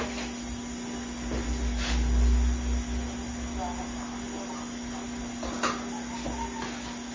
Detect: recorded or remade recorded